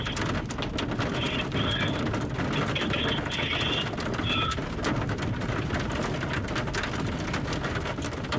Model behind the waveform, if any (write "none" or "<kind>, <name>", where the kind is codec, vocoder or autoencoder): none